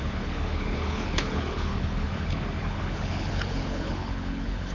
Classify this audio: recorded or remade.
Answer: remade